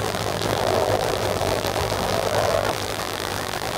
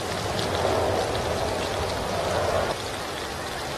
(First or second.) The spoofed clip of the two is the first